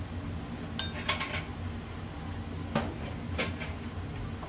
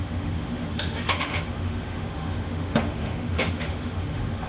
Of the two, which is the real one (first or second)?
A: first